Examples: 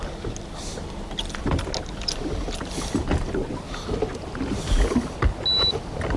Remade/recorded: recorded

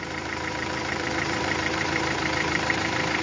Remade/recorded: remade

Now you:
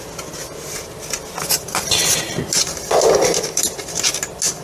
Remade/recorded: recorded